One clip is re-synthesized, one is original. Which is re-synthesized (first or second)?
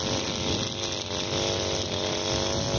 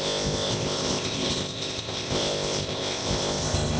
second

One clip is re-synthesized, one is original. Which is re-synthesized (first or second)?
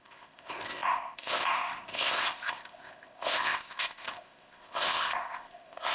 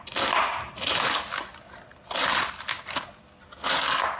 first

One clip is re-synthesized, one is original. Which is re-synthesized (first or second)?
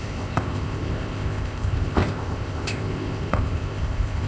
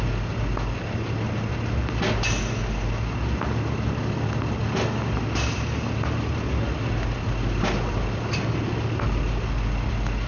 first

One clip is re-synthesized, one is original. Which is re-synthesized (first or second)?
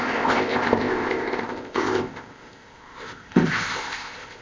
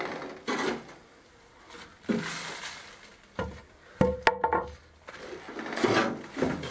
first